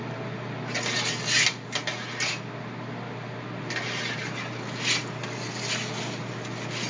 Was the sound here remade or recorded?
recorded